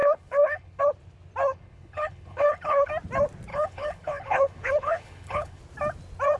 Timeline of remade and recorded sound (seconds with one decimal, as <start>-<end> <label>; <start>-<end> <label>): 0.0-0.8 remade; 0.8-1.5 recorded; 1.5-2.9 remade; 2.9-3.5 recorded; 3.5-5.6 remade; 5.6-6.4 recorded